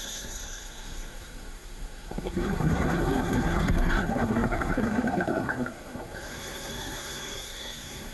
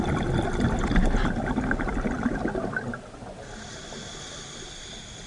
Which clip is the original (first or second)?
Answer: second